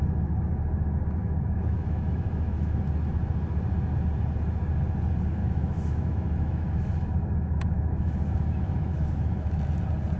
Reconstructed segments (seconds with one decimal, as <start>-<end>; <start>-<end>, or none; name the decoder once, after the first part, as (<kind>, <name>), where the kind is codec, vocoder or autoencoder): 1.2-2.8 (autoencoder, DAC-VAE); 5.4-9.6